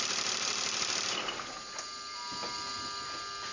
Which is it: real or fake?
real